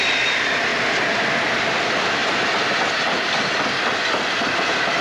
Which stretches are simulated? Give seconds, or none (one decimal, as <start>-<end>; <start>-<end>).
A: none